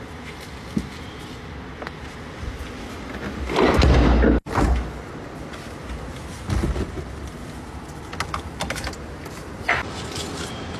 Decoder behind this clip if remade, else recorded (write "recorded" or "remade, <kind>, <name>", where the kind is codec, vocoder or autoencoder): recorded